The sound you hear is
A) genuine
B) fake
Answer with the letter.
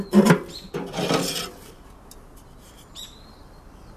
A